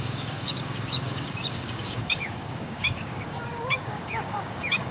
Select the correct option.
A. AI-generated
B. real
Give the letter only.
A